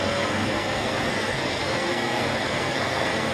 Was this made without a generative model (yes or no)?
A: no